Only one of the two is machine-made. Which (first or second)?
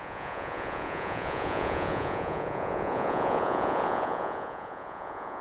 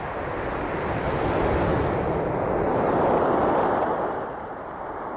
first